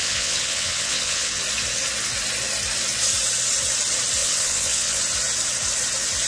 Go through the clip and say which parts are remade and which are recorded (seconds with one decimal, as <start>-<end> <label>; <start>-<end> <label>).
0.0-1.4 remade; 1.4-4.2 recorded; 4.2-5.0 remade; 5.0-6.3 recorded